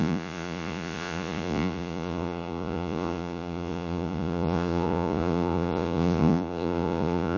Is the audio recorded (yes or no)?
no